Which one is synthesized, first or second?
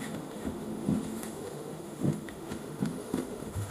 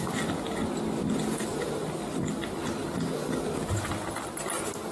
first